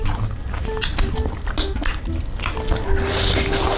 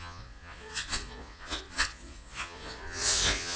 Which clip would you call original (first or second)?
first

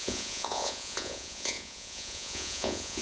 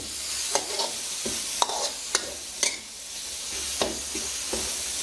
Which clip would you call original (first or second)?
second